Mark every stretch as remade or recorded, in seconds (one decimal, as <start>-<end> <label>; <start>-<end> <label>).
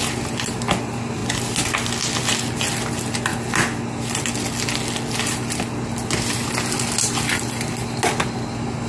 0.0-8.9 recorded